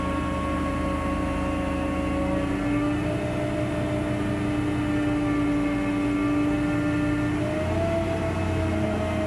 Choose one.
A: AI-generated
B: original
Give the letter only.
B